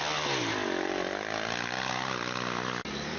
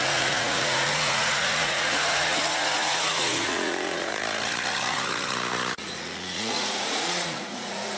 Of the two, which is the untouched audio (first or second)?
first